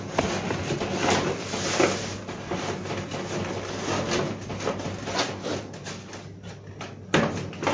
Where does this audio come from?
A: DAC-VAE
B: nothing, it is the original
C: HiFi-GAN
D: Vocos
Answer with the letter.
B